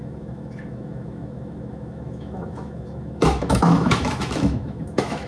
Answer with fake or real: fake